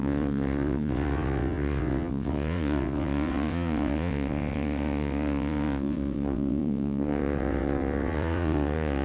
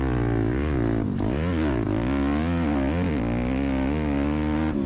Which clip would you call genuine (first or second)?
second